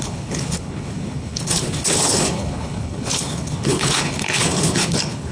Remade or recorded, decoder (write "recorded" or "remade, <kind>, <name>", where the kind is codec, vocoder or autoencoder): remade, codec, HILCodec